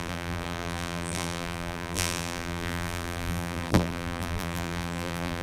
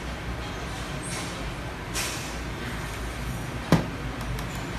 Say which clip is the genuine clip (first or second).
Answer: second